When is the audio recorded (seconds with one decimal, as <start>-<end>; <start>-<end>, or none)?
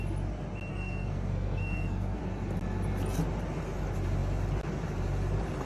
0.0-0.7; 2.2-5.7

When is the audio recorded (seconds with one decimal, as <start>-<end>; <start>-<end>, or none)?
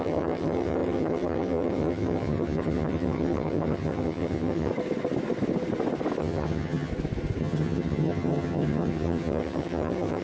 4.7-6.2; 6.9-7.4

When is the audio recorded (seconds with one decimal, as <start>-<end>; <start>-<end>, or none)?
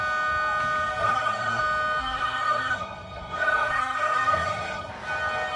0.0-1.0; 1.6-2.0; 4.9-5.6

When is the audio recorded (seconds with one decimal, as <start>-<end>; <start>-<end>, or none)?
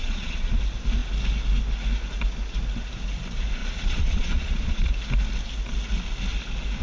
0.6-3.6; 4.9-6.8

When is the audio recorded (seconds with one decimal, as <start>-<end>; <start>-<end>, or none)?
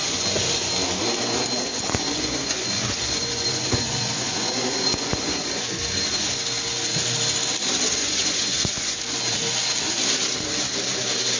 0.7-1.7; 6.4-8.0; 9.0-11.4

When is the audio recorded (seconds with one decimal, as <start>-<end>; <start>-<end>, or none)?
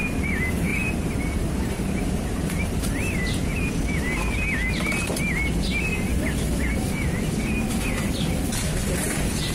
0.0-0.7; 3.7-9.5